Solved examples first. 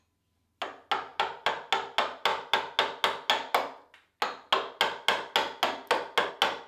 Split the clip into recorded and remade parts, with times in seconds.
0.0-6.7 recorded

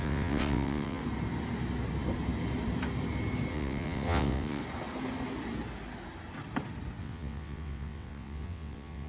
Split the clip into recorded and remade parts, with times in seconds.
0.0-1.0 remade; 1.0-3.5 recorded; 3.5-4.6 remade; 4.6-7.0 recorded; 7.0-9.1 remade

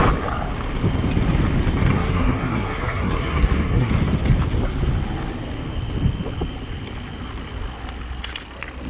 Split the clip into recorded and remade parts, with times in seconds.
0.0-1.9 recorded; 1.9-3.9 remade; 3.9-8.9 recorded

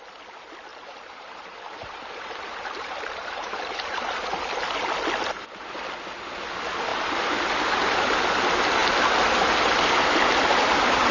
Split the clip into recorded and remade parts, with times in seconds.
0.0-0.7 recorded; 0.7-4.0 remade; 4.0-6.9 recorded; 6.9-7.4 remade; 7.4-11.1 recorded

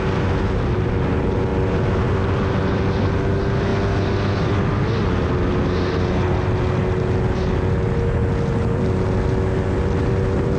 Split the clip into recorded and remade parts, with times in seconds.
0.0-10.6 recorded